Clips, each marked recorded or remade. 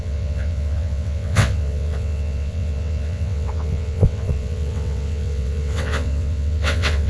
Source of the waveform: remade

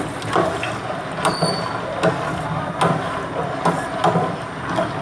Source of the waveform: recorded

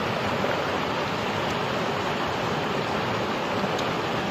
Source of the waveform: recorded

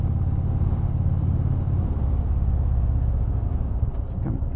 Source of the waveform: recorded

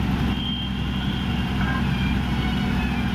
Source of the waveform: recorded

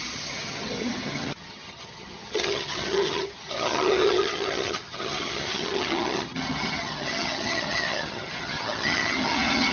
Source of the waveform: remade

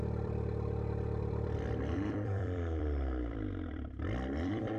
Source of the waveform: remade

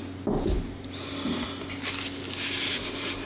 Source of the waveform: recorded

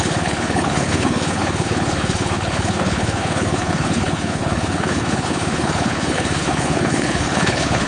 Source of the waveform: remade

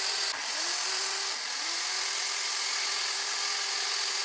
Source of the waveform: recorded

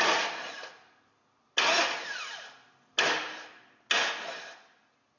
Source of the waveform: recorded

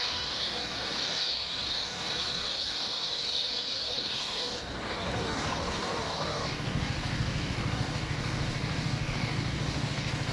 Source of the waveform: remade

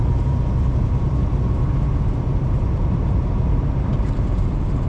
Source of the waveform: remade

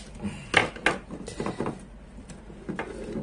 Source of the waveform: recorded